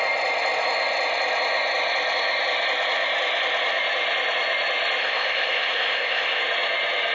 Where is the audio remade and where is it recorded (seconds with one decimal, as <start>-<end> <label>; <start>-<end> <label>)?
0.0-5.0 recorded; 5.0-6.4 remade; 6.4-7.1 recorded